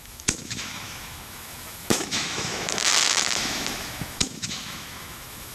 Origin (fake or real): fake